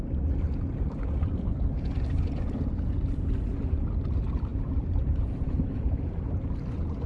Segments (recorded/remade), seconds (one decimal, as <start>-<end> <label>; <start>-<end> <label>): 0.0-4.5 recorded; 4.5-6.4 remade; 6.4-7.1 recorded